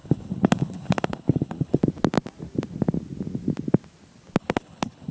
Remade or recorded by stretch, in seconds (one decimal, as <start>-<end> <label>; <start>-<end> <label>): 0.0-1.8 remade; 1.8-4.4 recorded; 4.4-5.1 remade